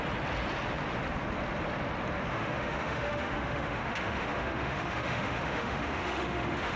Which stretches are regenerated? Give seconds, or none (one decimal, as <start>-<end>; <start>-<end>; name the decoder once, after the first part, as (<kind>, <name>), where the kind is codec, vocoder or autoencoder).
2.3-6.8 (autoencoder, DAC-VAE)